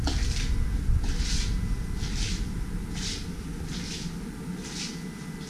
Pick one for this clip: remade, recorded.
recorded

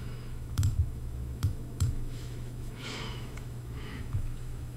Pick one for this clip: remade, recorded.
remade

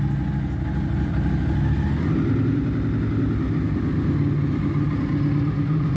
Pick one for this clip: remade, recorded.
recorded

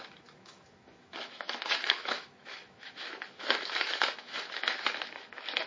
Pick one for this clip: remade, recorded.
remade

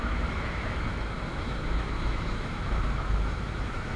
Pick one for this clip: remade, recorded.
remade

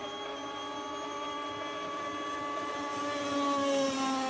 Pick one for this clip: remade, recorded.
recorded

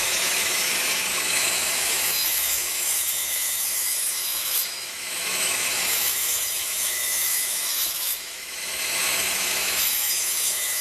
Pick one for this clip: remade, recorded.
remade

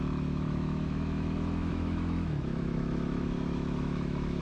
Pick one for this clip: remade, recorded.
remade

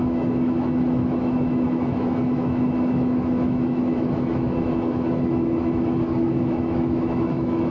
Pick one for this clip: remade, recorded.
remade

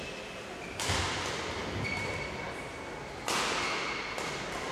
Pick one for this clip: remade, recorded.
recorded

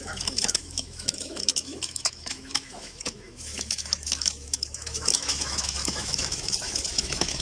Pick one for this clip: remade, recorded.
remade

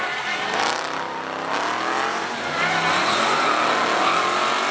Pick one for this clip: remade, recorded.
recorded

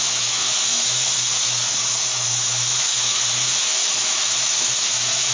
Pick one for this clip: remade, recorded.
remade